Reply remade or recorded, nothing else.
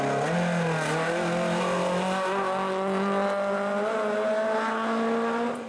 recorded